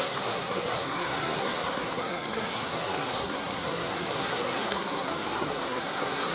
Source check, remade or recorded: remade